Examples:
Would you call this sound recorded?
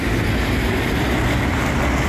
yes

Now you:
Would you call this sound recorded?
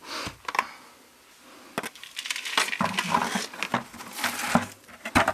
yes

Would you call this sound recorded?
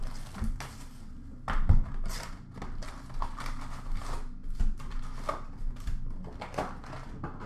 yes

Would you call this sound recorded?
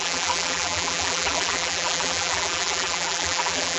no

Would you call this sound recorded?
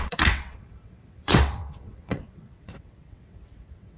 no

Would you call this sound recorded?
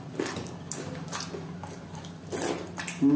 yes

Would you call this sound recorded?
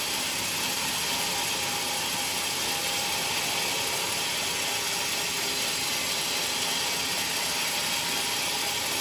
yes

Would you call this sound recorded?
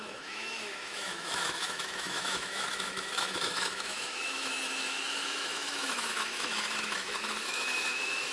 no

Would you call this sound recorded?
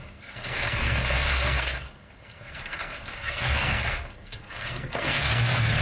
no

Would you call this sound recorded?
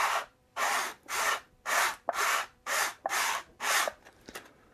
no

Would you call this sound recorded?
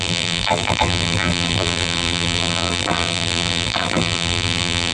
no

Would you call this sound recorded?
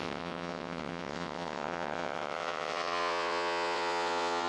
no